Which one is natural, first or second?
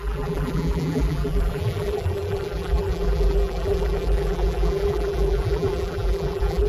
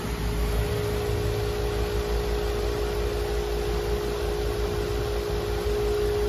second